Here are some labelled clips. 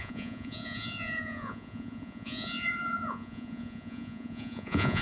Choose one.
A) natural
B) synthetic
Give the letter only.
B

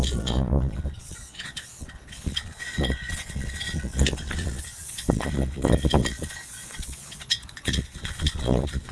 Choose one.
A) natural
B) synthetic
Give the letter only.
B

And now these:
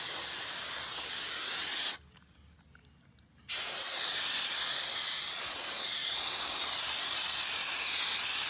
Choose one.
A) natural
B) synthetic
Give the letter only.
A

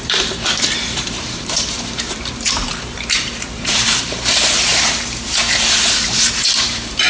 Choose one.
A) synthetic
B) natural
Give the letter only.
A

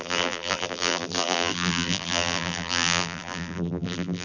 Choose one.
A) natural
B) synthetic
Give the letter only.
B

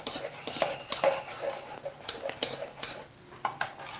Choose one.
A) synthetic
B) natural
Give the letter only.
B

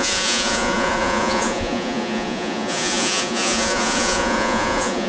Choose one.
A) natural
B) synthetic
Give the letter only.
B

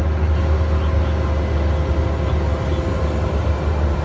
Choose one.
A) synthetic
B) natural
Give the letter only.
B